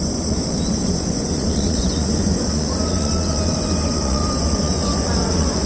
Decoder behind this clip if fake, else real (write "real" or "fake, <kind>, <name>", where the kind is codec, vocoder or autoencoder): fake, vocoder, Vocos